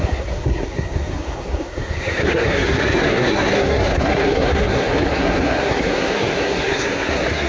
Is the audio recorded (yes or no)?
no